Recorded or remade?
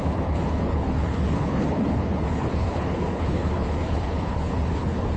remade